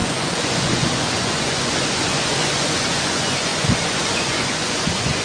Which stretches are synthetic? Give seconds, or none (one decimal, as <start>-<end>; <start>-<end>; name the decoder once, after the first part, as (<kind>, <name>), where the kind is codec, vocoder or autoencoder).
0.0-5.2 (vocoder, Vocos)